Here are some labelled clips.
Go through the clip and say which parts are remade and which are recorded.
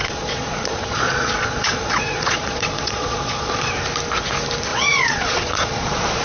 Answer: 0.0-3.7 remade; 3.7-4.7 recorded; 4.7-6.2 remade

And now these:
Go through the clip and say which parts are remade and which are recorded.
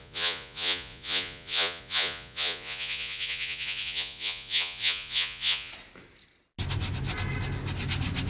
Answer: 0.0-5.7 remade; 5.7-8.3 recorded